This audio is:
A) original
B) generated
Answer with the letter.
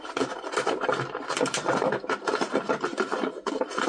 A